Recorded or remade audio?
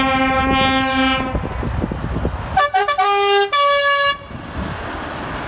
recorded